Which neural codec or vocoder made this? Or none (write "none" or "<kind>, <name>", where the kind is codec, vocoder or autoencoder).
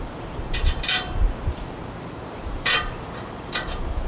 vocoder, BigVGAN v2